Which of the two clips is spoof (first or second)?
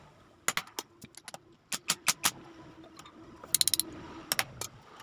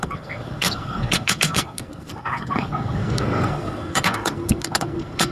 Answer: second